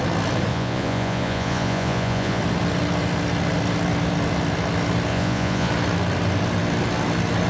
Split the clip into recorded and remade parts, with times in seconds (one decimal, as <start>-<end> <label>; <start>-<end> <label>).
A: 0.0-0.5 recorded; 0.5-2.4 remade; 2.4-5.1 recorded; 5.1-5.7 remade; 5.7-7.5 recorded